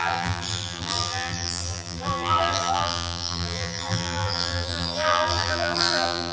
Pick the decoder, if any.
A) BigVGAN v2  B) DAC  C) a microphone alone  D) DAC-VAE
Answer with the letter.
A